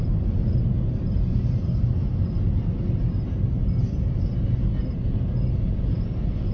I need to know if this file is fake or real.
real